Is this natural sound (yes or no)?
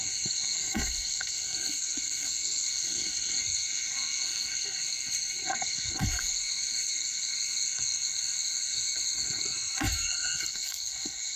no